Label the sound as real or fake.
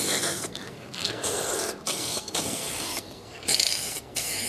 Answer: fake